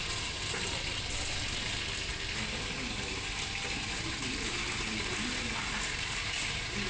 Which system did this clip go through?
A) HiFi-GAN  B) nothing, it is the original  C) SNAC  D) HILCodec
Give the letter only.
B